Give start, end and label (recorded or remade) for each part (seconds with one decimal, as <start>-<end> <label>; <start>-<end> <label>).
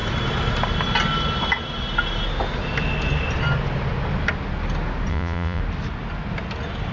0.0-5.1 recorded; 5.1-5.6 remade; 5.6-6.9 recorded